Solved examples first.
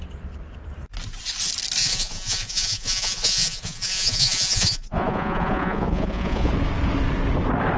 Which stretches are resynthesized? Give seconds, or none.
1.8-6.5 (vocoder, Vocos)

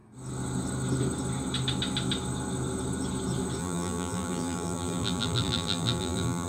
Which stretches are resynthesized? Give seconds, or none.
3.6-6.5 (vocoder, BigVGAN v2)

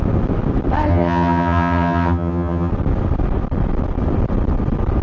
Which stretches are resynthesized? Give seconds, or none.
0.9-2.7 (vocoder, HiFi-GAN)

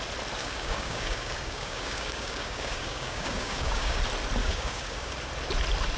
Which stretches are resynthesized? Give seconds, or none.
0.4-4.0 (codec, DAC); 4.4-5.1